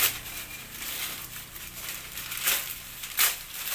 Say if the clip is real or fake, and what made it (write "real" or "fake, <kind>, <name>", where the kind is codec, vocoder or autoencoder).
fake, vocoder, BigVGAN v2